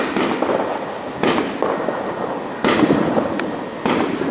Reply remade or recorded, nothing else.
recorded